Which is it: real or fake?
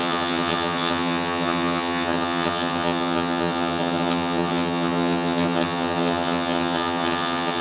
fake